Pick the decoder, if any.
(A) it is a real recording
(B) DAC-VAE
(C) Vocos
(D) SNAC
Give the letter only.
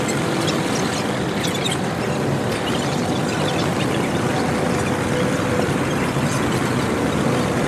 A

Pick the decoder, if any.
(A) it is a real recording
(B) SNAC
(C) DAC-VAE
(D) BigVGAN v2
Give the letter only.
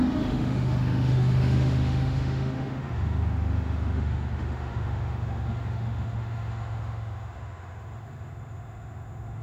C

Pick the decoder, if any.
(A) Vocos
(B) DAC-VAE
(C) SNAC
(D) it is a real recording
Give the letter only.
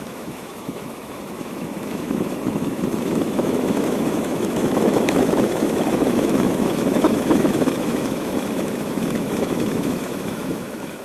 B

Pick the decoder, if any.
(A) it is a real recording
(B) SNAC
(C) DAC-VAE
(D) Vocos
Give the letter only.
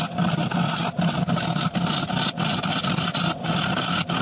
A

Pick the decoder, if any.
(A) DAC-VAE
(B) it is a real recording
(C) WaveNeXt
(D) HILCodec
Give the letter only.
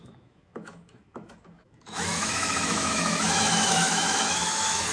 A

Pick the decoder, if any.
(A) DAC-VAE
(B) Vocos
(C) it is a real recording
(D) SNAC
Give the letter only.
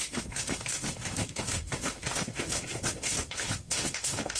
A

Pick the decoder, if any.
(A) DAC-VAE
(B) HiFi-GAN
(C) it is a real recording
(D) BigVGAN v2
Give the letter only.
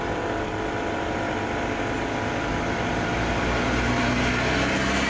C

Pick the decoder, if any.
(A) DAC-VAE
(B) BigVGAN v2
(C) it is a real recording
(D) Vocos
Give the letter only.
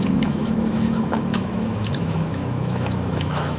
A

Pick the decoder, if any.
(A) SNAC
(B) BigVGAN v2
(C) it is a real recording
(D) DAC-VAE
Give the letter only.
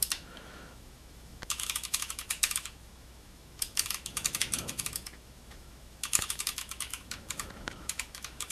D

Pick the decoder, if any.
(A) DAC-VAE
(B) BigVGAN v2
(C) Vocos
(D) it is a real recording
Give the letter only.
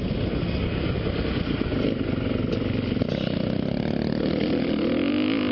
D